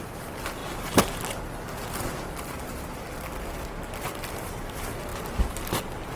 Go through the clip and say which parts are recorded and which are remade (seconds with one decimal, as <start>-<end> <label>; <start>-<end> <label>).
0.0-6.2 recorded